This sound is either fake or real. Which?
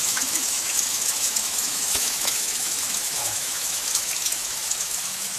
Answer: fake